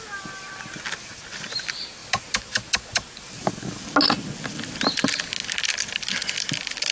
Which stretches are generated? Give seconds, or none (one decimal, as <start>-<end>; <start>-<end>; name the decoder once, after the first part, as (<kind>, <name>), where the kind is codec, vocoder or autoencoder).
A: 2.0-2.7 (vocoder, BigVGAN v2)